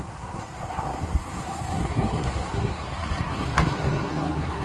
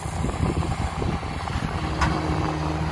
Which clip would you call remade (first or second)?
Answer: first